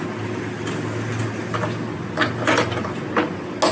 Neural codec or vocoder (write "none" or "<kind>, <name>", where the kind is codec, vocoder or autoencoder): none